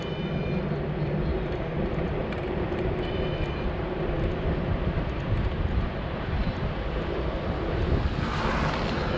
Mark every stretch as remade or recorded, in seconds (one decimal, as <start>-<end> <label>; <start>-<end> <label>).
0.0-1.3 recorded; 1.3-6.6 remade; 6.6-9.2 recorded